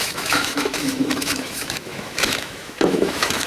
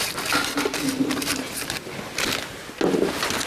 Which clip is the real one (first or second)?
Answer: second